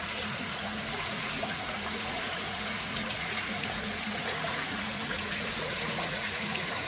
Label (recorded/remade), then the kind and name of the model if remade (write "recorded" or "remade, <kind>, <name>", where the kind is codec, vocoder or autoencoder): remade, vocoder, Vocos